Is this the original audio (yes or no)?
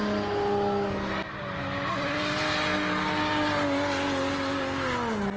yes